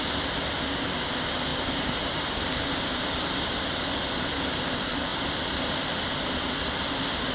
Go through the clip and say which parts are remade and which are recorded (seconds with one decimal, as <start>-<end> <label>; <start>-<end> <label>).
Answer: 0.0-1.5 recorded; 1.5-2.6 remade; 2.6-7.3 recorded